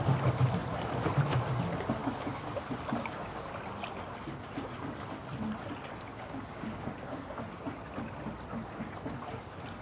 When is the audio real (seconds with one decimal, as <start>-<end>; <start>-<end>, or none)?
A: 0.0-2.0; 3.5-6.1; 7.4-9.8